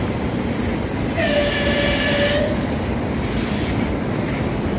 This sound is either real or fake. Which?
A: fake